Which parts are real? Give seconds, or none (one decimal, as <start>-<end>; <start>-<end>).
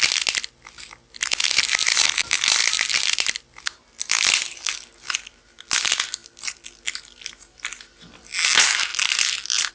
0.0-2.6; 3.6-9.7